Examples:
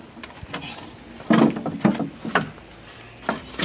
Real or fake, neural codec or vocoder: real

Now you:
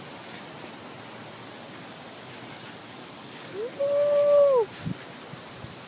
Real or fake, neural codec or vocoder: real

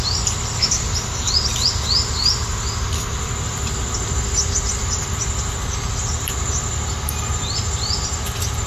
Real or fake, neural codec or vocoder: real